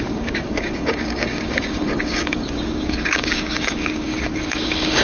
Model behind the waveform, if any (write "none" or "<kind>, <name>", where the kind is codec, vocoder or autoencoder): codec, DAC